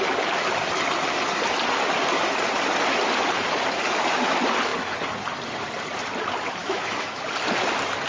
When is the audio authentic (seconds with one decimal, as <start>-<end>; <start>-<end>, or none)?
0.0-6.6; 7.2-8.1